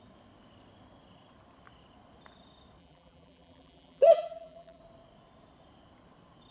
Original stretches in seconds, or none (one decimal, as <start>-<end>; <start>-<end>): 0.0-2.8; 4.8-6.5